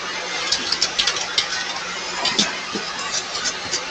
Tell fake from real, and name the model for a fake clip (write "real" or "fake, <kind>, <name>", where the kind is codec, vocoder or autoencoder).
real